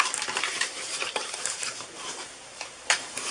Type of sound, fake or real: fake